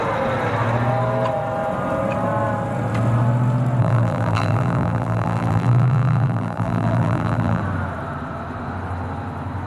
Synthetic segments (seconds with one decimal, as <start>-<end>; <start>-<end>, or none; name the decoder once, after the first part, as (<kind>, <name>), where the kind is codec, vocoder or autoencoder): 3.8-7.6 (vocoder, BigVGAN v2)